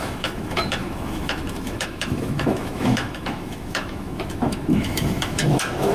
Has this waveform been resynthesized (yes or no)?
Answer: yes